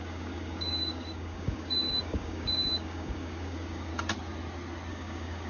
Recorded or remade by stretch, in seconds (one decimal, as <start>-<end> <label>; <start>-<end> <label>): 0.0-3.9 remade; 3.9-4.9 recorded; 4.9-5.5 remade